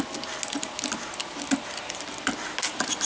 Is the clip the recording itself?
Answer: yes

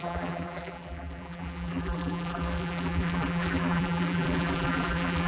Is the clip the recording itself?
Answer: no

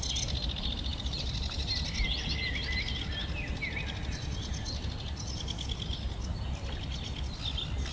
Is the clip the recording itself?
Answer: yes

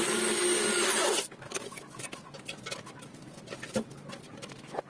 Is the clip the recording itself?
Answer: yes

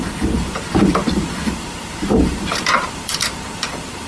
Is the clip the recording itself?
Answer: no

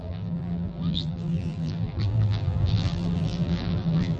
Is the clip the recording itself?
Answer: no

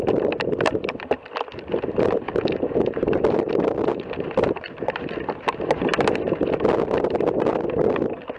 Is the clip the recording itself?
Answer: yes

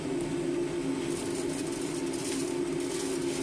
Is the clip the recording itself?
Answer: yes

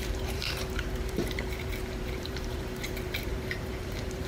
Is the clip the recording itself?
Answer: no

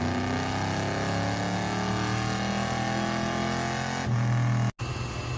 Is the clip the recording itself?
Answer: yes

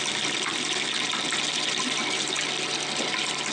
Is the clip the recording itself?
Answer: yes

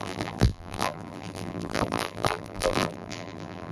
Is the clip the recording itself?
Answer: no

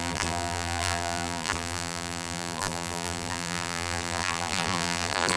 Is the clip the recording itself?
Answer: no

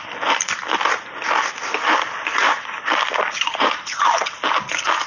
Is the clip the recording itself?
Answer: no